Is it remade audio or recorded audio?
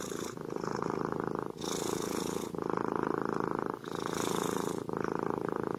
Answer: recorded